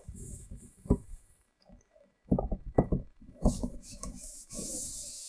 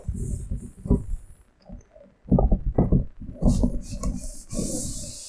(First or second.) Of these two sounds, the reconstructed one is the first